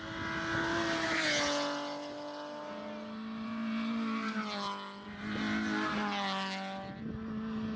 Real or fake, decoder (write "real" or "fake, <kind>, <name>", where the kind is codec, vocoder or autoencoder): real